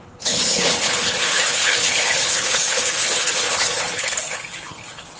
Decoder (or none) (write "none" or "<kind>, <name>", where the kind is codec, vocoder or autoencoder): codec, HILCodec